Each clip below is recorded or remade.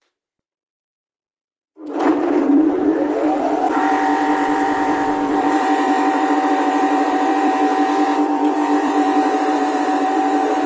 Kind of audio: remade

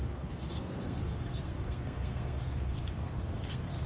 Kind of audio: remade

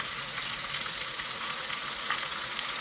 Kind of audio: remade